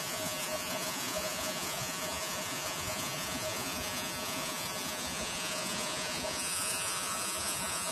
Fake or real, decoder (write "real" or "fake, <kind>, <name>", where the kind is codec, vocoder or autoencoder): fake, vocoder, Vocos